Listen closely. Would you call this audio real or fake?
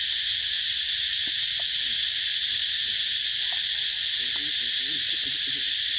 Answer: real